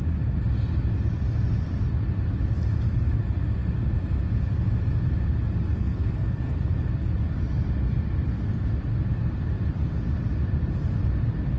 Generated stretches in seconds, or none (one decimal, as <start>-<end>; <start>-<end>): 5.7-6.7